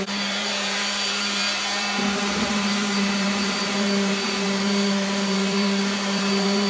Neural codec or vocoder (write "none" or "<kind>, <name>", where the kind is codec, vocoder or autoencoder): vocoder, BigVGAN v2